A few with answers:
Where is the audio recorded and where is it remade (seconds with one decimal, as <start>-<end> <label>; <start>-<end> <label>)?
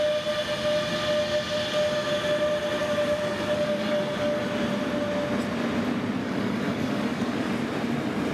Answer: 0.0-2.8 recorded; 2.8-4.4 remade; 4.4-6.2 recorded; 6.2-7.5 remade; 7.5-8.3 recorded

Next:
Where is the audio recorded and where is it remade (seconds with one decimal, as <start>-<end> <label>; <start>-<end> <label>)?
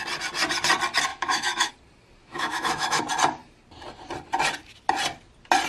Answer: 0.0-1.1 recorded; 1.1-1.7 remade; 1.7-2.2 recorded; 2.2-3.0 remade; 3.0-5.7 recorded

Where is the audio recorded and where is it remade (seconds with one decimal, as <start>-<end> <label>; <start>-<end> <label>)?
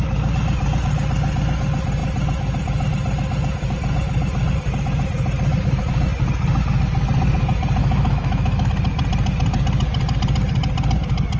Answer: 0.0-7.8 recorded; 7.8-8.7 remade; 8.7-11.4 recorded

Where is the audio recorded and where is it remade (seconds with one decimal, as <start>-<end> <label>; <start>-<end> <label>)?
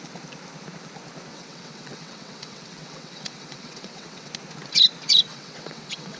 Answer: 0.0-1.3 recorded; 1.3-4.3 remade; 4.3-5.3 recorded; 5.3-6.2 remade